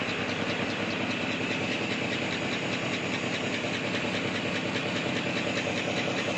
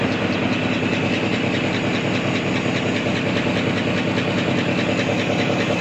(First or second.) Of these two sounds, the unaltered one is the second